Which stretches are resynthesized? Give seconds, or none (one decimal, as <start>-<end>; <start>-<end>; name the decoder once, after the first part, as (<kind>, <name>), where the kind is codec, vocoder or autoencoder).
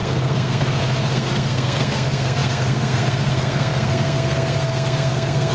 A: 0.0-5.5 (codec, SNAC)